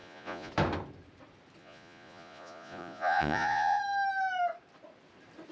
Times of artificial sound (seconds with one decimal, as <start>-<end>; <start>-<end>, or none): 0.0-0.5; 1.6-3.8

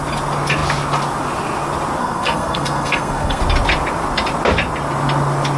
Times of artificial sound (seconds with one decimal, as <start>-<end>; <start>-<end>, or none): 2.0-3.4